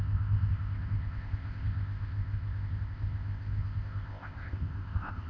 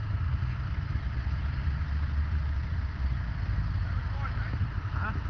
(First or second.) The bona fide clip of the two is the second